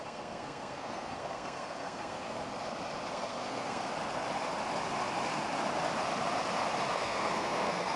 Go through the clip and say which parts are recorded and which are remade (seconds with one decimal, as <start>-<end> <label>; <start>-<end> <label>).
0.0-2.5 remade; 2.5-3.1 recorded; 3.1-3.9 remade; 3.9-6.9 recorded; 6.9-8.0 remade